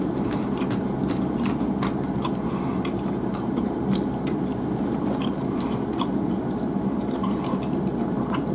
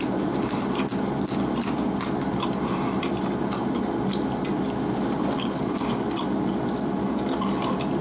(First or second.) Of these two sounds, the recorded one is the second